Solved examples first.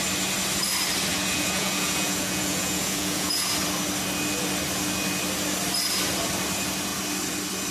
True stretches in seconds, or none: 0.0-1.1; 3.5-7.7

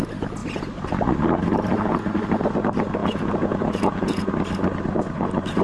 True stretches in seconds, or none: 0.0-3.0; 4.3-5.6

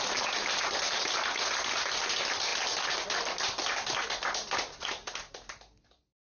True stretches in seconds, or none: 0.0-6.3

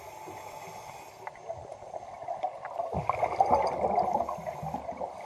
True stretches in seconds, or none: 0.0-5.3

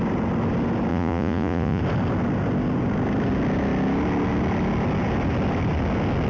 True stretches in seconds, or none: 0.0-0.9; 1.8-6.3

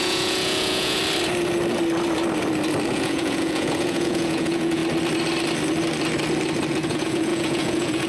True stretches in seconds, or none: 1.0-2.9; 4.8-6.7

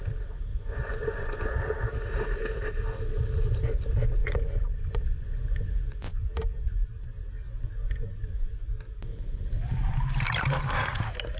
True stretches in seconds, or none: 0.0-0.5; 1.4-4.2; 6.2-11.4

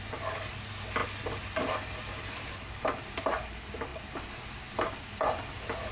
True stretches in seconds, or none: 0.0-5.9